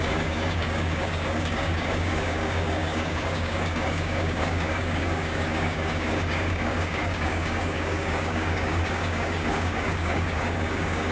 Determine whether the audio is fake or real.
fake